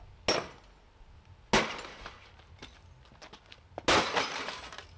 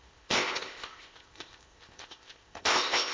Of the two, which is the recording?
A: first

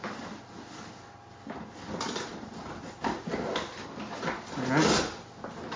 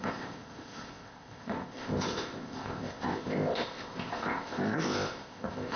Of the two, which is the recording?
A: first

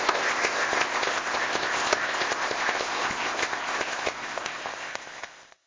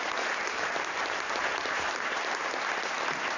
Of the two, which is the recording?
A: second